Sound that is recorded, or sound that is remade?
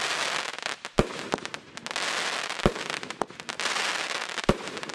recorded